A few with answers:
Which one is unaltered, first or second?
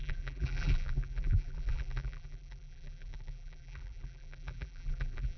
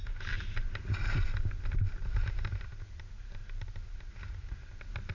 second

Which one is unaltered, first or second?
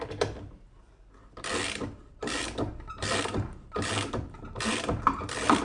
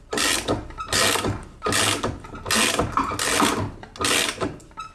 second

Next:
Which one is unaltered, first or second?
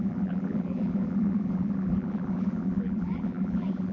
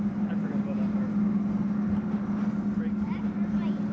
second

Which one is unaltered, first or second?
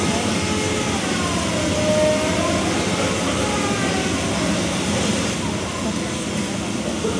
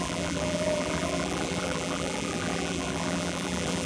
first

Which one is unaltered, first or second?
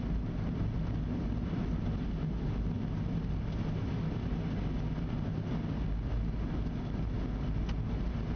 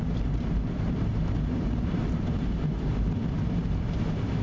first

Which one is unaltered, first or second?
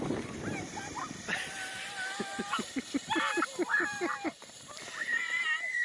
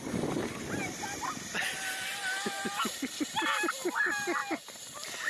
second